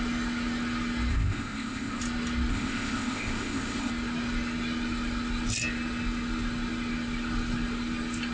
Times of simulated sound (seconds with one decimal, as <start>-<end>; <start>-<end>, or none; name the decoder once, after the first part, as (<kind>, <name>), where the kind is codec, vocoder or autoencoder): 1.1-2.0 (codec, ZipCodec); 2.5-3.9